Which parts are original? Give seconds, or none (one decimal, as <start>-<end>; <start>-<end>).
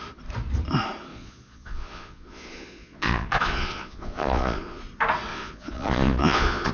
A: 0.0-1.1; 4.8-5.3